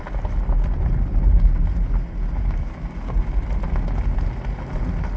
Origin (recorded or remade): recorded